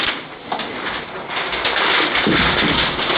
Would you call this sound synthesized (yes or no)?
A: no